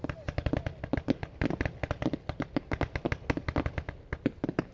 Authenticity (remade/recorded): recorded